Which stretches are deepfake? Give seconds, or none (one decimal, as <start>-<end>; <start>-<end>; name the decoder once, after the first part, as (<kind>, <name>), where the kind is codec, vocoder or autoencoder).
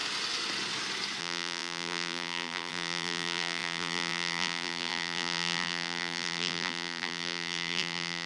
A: 1.2-8.3 (vocoder, BigVGAN v2)